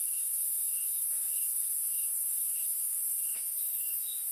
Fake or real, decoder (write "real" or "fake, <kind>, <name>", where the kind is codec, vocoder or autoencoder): fake, autoencoder, DAC-VAE